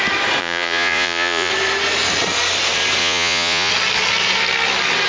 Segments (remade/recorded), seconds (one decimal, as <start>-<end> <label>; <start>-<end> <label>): 0.0-0.4 recorded; 0.4-1.5 remade; 1.5-3.0 recorded; 3.0-3.7 remade; 3.7-5.1 recorded